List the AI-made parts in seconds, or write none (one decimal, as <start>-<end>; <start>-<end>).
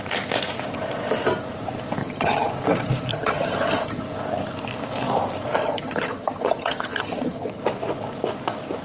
2.0-2.5; 3.1-4.0; 5.6-7.6